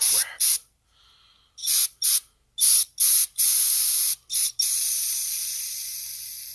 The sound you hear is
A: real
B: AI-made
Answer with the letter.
A